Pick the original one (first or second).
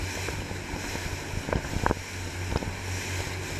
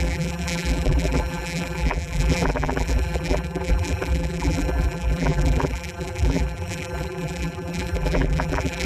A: first